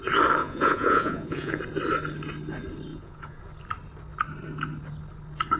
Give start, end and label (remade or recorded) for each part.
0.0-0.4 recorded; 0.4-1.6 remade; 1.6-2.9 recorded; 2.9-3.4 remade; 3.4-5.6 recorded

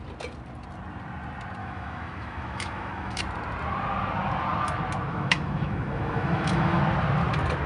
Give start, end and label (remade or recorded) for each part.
0.0-1.6 recorded; 1.6-3.2 remade; 3.2-5.1 recorded; 5.1-6.8 remade; 6.8-7.7 recorded